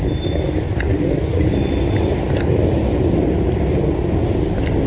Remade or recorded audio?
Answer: recorded